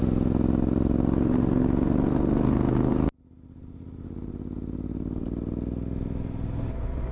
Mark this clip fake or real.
real